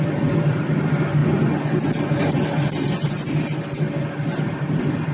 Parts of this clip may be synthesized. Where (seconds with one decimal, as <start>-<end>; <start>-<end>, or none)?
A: 0.0-1.2; 4.3-5.1